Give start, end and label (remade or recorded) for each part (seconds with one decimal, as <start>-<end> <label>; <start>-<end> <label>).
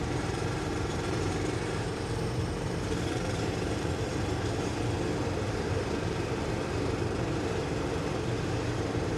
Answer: 0.0-4.7 remade; 4.7-5.2 recorded; 5.2-9.2 remade